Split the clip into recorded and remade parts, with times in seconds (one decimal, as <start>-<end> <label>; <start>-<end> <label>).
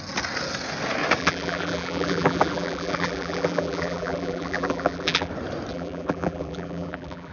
0.0-1.2 recorded; 1.2-5.3 remade; 5.3-5.7 recorded; 5.7-7.3 remade